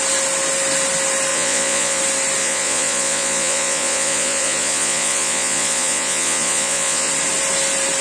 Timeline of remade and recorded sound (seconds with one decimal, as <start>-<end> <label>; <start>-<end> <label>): 0.0-1.3 recorded; 1.3-2.0 remade; 2.0-2.4 recorded; 2.4-7.1 remade; 7.1-8.0 recorded